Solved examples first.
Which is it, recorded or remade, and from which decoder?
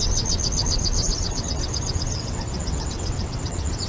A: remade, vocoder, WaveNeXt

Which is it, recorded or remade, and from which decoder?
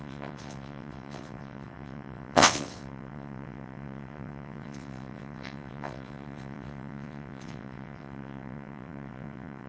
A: remade, vocoder, WaveNeXt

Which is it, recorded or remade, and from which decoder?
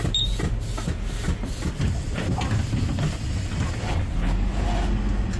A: recorded